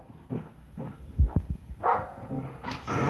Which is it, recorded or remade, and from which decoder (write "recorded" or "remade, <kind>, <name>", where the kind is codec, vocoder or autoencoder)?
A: remade, codec, SNAC